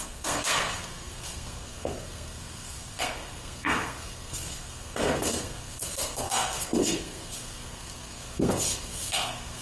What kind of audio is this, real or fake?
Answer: fake